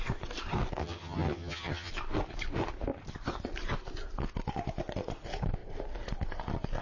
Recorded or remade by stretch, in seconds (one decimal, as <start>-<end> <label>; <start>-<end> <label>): 0.0-0.8 recorded; 0.8-1.9 remade; 1.9-6.8 recorded